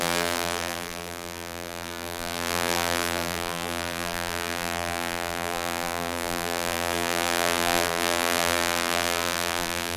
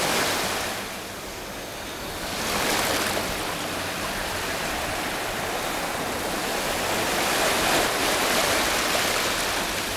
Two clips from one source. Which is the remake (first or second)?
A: first